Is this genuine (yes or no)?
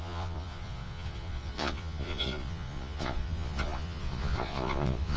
no